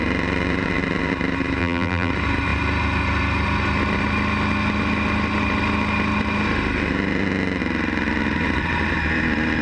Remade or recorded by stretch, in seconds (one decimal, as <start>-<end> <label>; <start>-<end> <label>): 0.0-1.6 recorded; 1.6-2.1 remade; 2.1-9.6 recorded